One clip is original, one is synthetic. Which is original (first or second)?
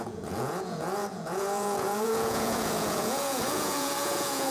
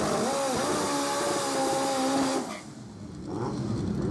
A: second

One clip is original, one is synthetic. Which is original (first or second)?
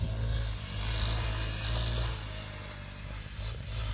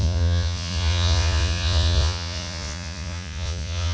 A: first